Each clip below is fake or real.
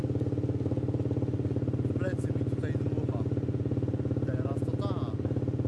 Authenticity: real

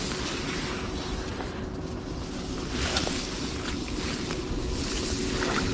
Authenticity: real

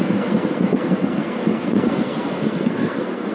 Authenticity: fake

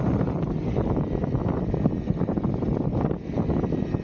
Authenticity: real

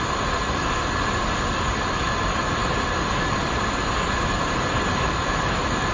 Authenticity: real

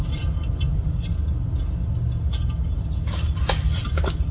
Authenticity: real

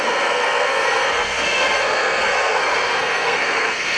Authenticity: fake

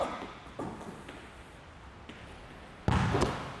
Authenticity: real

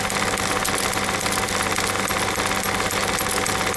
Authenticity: real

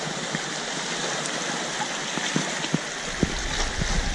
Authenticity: real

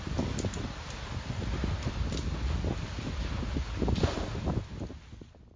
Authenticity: real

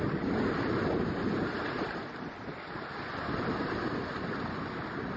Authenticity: real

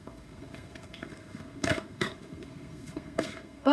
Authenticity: fake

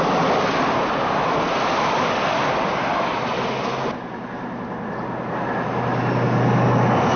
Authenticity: real